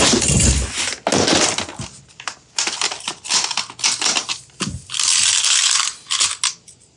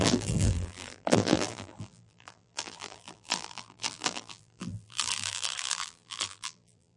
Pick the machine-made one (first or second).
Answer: second